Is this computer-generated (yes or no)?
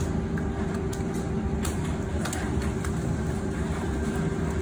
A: no